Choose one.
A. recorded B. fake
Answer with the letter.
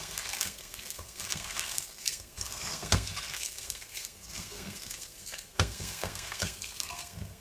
B